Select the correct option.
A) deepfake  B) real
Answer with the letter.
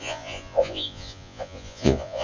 A